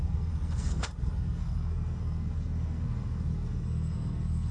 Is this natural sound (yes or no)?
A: no